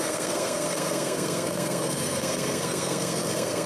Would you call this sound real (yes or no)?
no